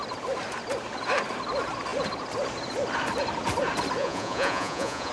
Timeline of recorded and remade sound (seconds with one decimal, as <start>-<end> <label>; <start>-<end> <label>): 0.0-4.0 recorded; 4.0-5.1 remade